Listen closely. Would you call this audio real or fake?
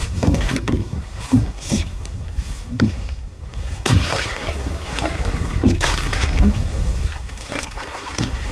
fake